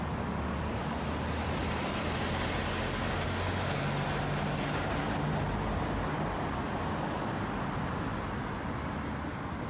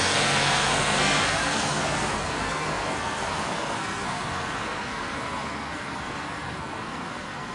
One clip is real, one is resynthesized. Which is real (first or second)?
first